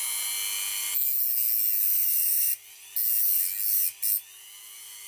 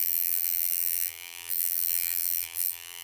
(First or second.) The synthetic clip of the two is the second